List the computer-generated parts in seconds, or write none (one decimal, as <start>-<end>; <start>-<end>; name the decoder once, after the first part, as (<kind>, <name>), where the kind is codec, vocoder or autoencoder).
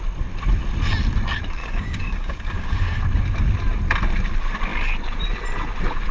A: 1.6-3.0 (codec, DAC)